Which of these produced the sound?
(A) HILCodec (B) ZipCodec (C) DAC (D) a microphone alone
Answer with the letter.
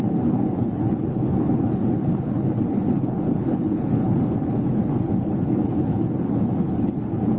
A